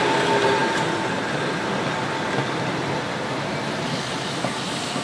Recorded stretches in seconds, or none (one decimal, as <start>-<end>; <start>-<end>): 0.0-5.0